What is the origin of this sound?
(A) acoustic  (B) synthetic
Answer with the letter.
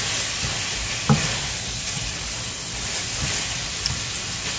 A